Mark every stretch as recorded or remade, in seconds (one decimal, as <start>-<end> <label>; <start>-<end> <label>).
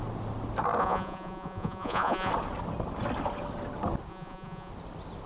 0.0-0.8 recorded; 0.8-2.3 remade; 2.3-4.1 recorded; 4.1-4.7 remade; 4.7-5.3 recorded